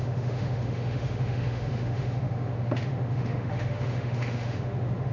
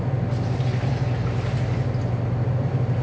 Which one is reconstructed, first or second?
first